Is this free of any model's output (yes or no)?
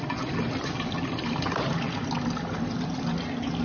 yes